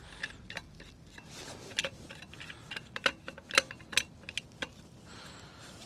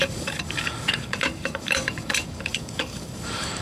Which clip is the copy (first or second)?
second